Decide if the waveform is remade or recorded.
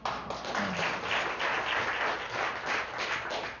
recorded